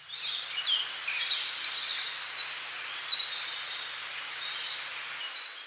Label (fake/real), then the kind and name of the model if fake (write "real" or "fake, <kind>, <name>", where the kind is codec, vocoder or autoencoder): real